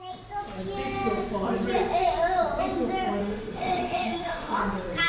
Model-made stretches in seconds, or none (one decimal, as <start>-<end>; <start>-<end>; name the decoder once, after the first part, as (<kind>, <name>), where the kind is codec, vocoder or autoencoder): 3.2-4.6 (autoencoder, DAC-VAE)